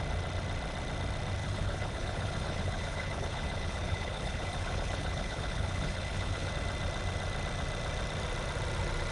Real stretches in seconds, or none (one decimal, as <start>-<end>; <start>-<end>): 0.0-1.4; 6.5-9.1